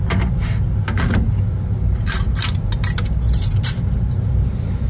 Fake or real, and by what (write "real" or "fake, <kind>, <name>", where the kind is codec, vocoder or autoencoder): real